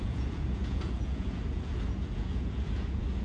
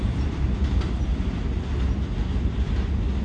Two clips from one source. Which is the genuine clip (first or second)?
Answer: second